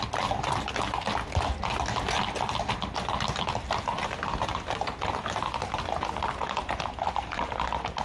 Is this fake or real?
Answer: real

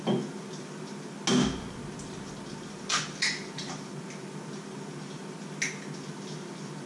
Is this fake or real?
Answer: real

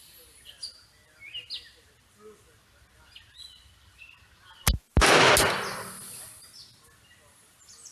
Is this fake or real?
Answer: real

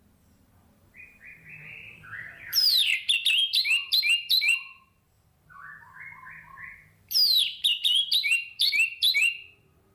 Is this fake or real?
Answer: fake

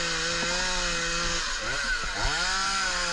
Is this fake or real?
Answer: real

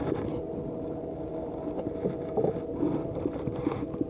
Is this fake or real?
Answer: real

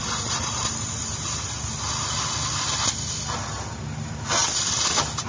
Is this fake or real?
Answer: fake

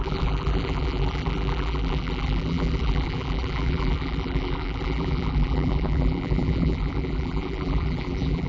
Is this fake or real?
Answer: fake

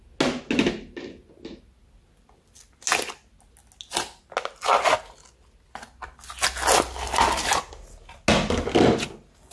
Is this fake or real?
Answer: real